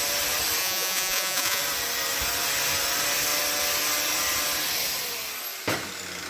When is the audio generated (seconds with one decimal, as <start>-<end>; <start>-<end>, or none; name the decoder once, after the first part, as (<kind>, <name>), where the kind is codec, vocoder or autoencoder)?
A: 0.6-1.6 (vocoder, Vocos)